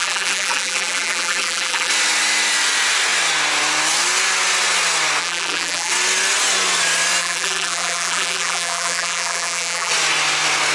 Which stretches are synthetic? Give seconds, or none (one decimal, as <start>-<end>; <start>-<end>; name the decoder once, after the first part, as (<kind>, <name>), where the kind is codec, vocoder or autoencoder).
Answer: 0.0-1.9 (vocoder, BigVGAN v2); 5.2-5.9; 7.2-9.9